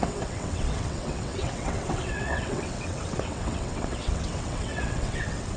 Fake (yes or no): yes